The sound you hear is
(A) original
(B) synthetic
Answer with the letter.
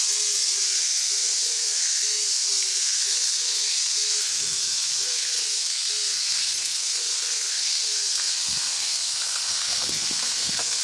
B